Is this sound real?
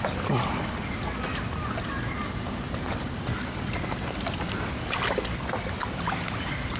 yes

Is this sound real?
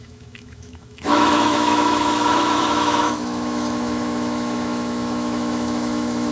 no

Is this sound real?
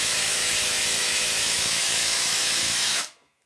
no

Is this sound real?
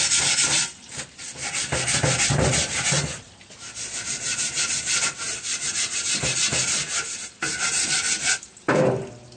yes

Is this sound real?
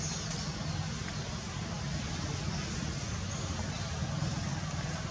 yes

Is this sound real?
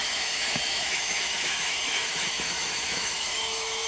no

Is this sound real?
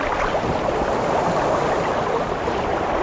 yes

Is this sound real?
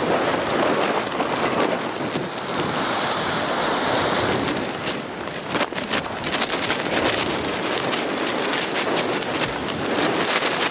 yes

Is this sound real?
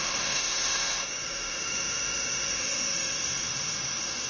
no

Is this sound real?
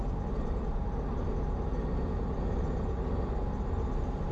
yes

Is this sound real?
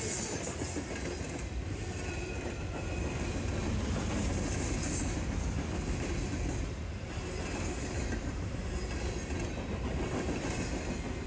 yes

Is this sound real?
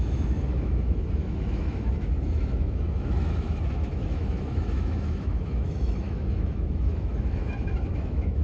no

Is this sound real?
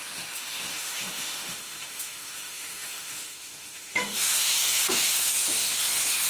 no